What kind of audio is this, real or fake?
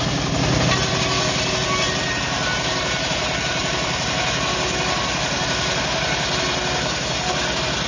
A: real